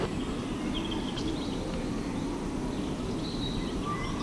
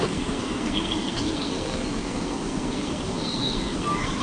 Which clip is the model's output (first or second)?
second